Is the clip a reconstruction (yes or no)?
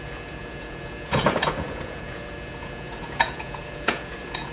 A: yes